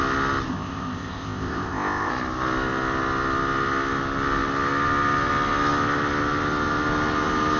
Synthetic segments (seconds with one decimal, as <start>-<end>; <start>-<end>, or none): 0.5-2.1